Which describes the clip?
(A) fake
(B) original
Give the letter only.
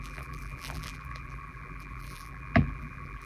A